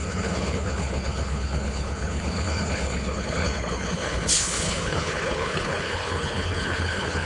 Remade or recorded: remade